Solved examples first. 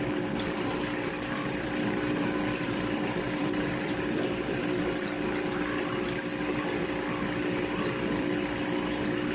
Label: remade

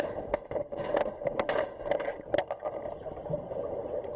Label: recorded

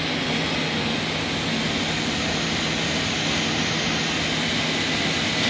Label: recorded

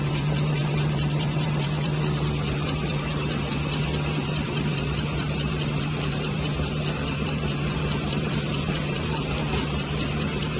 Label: remade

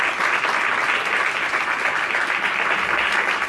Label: recorded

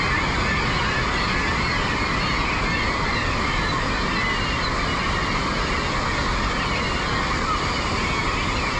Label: recorded